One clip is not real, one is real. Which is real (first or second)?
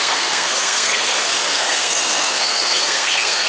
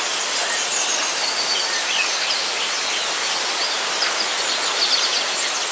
second